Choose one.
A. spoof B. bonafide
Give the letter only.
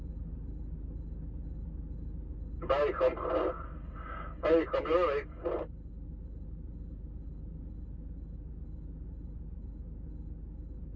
B